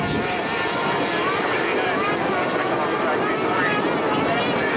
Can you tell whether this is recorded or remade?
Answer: recorded